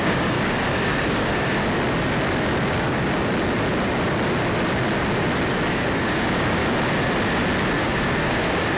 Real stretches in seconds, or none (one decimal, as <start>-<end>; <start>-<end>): 1.6-5.7; 6.6-7.8